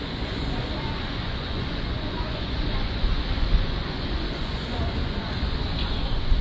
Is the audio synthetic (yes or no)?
yes